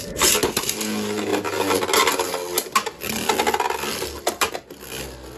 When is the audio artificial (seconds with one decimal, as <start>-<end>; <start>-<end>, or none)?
none